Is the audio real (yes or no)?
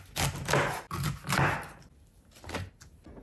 yes